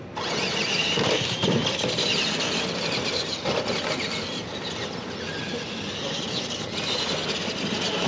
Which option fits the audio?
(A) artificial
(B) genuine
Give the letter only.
B